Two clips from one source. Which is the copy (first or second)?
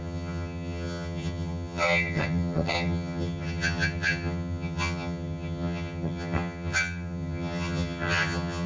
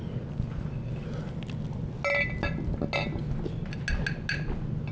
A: first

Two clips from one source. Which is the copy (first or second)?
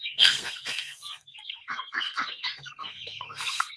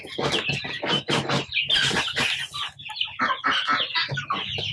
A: first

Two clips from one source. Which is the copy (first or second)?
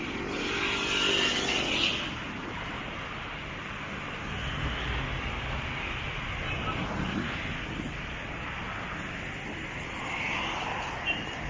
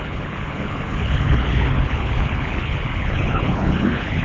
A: second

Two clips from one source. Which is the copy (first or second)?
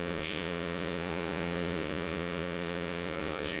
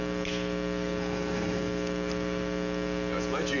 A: first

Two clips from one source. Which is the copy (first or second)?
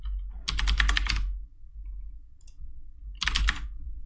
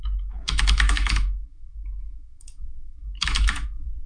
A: second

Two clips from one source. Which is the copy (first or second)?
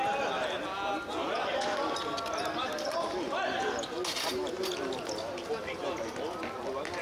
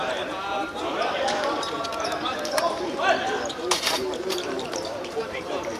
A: second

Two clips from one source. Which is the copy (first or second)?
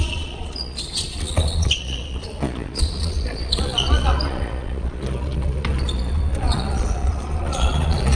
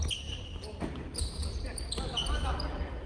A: first